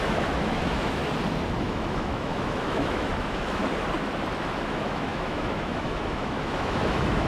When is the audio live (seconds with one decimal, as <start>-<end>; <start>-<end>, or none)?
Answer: 1.0-1.6; 3.6-4.4